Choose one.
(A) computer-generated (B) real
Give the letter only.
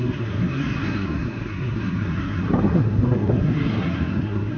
A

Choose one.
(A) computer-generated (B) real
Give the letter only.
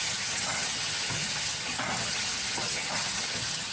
A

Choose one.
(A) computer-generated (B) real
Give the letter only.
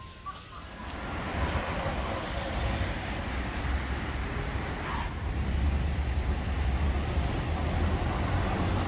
B